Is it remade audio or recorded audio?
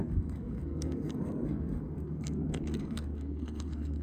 remade